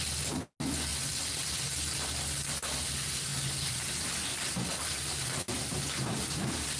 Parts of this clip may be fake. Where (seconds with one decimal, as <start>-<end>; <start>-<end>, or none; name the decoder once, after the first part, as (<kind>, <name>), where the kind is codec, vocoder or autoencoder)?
none